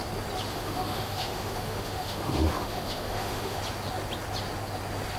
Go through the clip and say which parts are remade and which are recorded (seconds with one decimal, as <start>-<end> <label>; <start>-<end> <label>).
0.0-0.5 recorded; 0.5-3.6 remade; 3.6-5.2 recorded